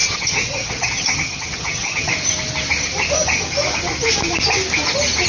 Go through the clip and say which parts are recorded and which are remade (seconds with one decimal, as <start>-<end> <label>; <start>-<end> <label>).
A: 0.0-2.1 remade; 2.1-5.3 recorded